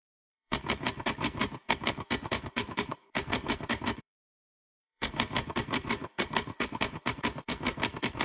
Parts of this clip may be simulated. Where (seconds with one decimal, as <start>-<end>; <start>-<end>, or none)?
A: 0.0-8.2